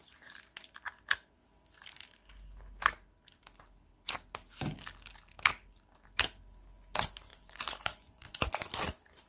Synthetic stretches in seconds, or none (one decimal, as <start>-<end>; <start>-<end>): 7.3-8.7